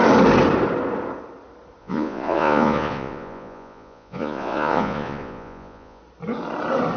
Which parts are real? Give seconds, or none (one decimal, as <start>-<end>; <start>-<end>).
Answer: 0.0-1.8; 6.0-7.0